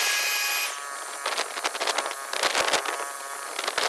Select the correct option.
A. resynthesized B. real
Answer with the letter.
B